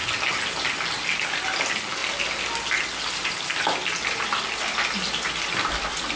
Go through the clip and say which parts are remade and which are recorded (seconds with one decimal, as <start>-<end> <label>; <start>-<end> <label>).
0.0-6.2 recorded